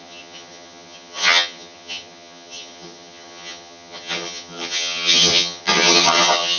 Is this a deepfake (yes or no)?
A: yes